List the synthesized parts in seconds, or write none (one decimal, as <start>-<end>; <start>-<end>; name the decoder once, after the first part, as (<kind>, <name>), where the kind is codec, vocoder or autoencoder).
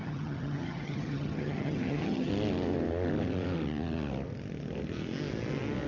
0.0-2.3 (vocoder, HiFi-GAN)